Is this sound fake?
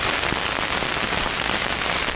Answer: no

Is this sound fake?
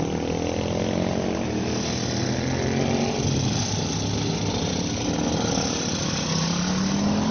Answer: no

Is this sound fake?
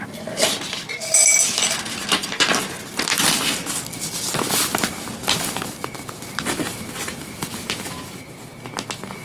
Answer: no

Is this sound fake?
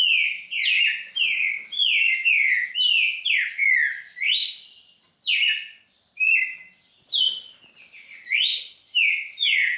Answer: no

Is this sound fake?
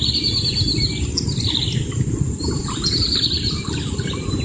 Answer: no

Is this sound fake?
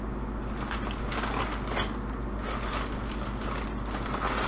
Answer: no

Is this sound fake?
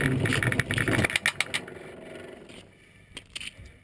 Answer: no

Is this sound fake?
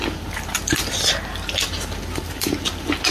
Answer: no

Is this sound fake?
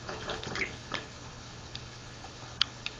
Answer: yes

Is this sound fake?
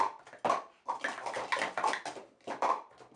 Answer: no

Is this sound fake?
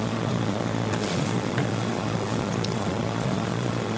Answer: yes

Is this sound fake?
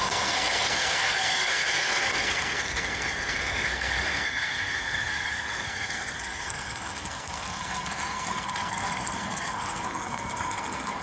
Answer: yes